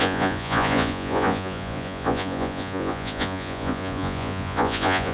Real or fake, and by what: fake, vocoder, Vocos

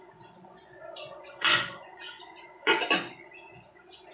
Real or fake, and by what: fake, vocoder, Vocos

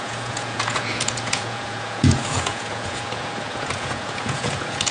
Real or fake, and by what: fake, vocoder, Vocos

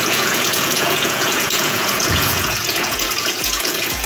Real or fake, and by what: fake, vocoder, Vocos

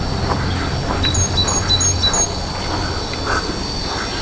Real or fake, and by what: real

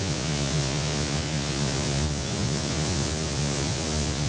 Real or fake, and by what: fake, vocoder, Vocos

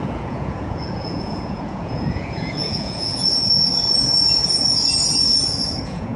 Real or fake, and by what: fake, vocoder, Vocos